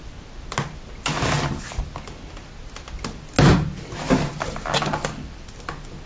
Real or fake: real